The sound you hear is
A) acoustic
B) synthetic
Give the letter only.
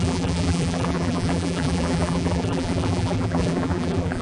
B